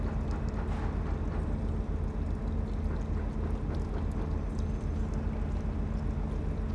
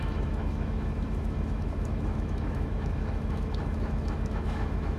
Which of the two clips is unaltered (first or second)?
first